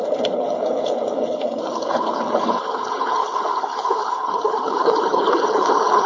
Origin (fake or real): fake